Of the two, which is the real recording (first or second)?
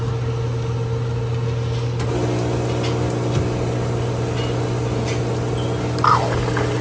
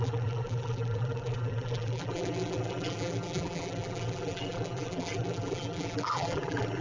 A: first